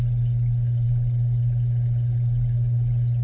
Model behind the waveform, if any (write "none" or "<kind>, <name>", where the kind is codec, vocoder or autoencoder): none